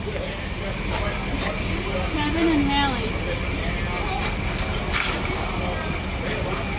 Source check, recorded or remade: recorded